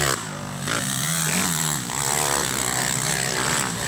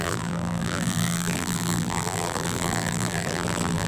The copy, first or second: second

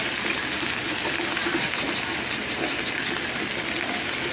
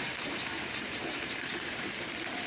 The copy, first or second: second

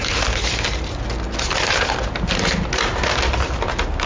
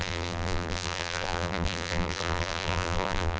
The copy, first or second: second